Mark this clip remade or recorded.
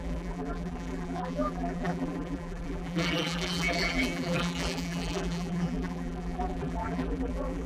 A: remade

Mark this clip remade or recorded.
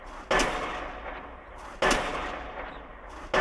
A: recorded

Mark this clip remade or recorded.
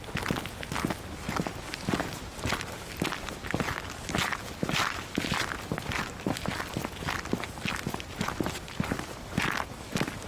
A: recorded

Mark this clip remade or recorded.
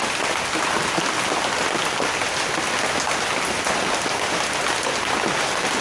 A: recorded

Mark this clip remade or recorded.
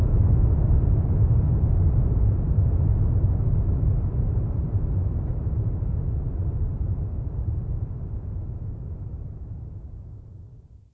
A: recorded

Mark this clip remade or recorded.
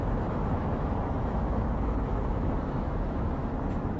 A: remade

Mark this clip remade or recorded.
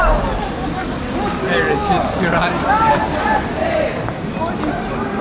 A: recorded